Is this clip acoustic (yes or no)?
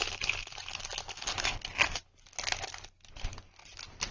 yes